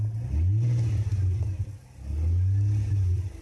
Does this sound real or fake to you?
real